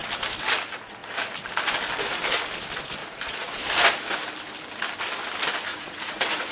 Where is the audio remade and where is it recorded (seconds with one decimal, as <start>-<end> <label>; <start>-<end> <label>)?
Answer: 0.0-3.0 recorded; 3.0-3.6 remade; 3.6-5.7 recorded; 5.7-6.5 remade